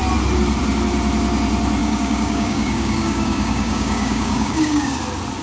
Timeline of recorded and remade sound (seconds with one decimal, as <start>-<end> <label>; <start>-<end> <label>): 0.0-1.8 recorded; 1.8-5.0 remade; 5.0-5.4 recorded

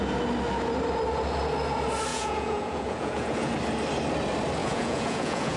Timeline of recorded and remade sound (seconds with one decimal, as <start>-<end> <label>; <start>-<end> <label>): 0.0-2.1 recorded; 2.1-3.5 remade; 3.5-4.6 recorded; 4.6-5.6 remade

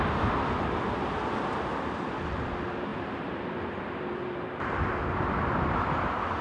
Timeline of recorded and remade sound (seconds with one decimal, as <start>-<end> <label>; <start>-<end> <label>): 0.0-2.9 recorded; 2.9-4.9 remade; 4.9-6.4 recorded

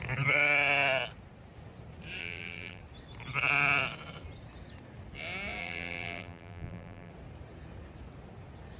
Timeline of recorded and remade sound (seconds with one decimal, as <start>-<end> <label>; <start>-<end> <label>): 0.0-2.2 recorded; 2.2-2.8 remade; 2.8-5.6 recorded; 5.6-7.1 remade; 7.1-8.8 recorded

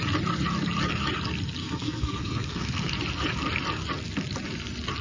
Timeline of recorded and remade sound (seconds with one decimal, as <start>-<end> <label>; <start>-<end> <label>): 0.0-1.6 recorded; 1.6-2.9 remade; 2.9-5.0 recorded

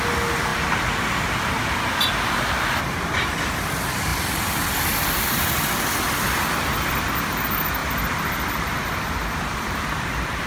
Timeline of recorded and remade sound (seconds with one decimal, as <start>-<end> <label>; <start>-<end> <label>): 0.0-7.8 recorded; 7.8-10.0 remade; 10.0-10.5 recorded